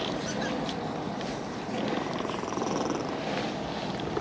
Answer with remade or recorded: recorded